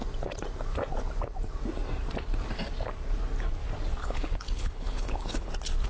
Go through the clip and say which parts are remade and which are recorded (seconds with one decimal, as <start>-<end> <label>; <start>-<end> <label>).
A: 0.0-4.0 recorded; 4.0-5.5 remade; 5.5-5.9 recorded